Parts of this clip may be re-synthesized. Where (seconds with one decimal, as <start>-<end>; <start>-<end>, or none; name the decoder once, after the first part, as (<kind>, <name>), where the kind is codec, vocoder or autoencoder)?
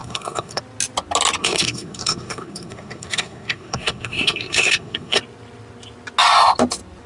0.0-0.6 (codec, SNAC); 1.4-5.2